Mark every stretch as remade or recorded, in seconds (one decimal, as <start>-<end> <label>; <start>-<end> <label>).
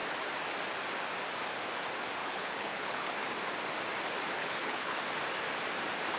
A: 0.0-2.2 recorded; 2.2-3.1 remade; 3.1-4.4 recorded; 4.4-5.0 remade; 5.0-6.2 recorded